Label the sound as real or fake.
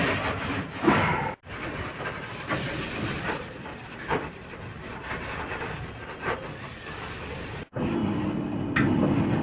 real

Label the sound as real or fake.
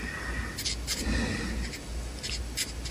real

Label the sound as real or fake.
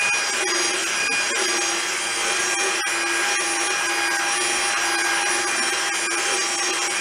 real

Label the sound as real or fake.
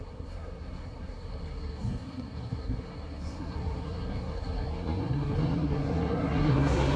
fake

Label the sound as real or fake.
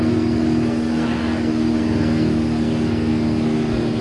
fake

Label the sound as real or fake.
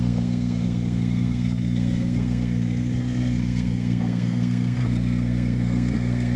fake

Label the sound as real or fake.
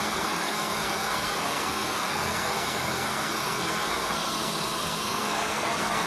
fake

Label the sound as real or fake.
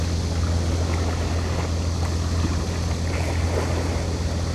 real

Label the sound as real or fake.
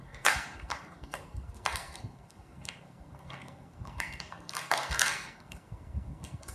fake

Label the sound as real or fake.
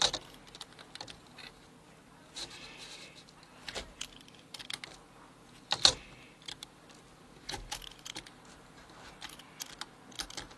real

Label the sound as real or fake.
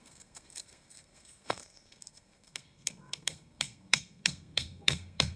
fake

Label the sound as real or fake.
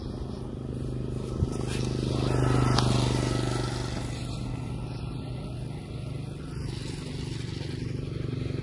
real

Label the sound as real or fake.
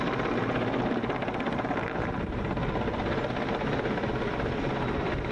real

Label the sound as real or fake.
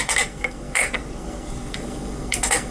fake